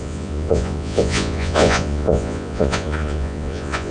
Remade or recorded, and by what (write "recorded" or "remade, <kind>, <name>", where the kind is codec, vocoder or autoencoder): remade, vocoder, Vocos